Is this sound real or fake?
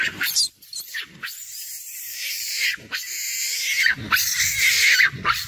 fake